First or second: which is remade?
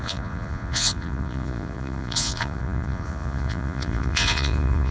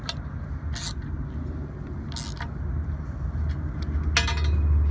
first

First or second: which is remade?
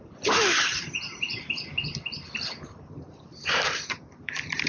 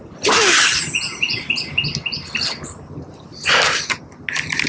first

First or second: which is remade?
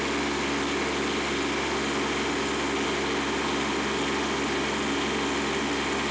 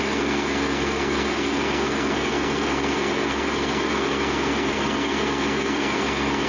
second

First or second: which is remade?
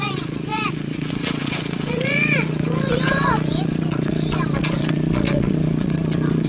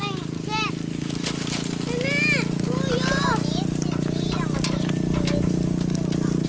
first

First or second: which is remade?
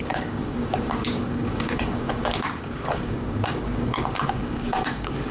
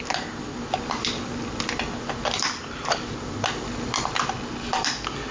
first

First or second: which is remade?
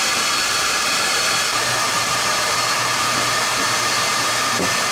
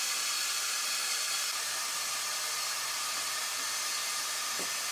first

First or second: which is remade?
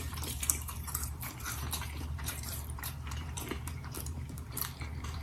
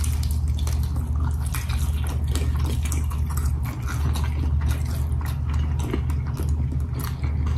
first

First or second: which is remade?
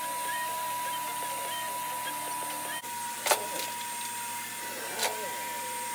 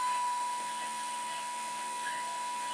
second